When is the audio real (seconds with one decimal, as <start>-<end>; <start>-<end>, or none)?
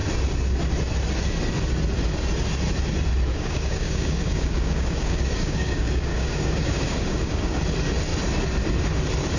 0.0-3.3; 7.6-9.4